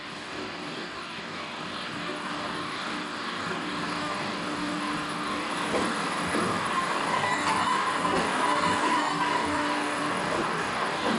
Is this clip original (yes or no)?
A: no